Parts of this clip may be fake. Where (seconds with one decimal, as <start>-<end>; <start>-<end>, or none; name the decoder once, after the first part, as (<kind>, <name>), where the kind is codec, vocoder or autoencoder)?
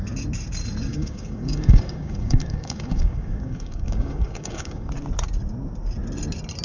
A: 0.9-4.9 (codec, DAC)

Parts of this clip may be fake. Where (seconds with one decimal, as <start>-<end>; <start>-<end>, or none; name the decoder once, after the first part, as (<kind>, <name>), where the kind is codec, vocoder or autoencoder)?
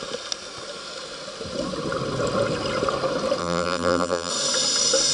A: 3.4-4.3 (vocoder, BigVGAN v2)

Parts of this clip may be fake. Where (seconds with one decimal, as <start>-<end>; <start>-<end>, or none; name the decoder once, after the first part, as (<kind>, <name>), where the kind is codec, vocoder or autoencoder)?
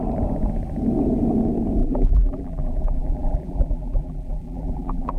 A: 1.8-5.2 (vocoder, BigVGAN v2)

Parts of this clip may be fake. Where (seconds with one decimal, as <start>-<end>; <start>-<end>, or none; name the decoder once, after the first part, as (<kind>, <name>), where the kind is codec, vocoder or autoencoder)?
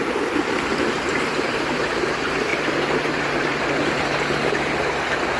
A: 0.7-2.0 (vocoder, BigVGAN v2); 2.5-3.6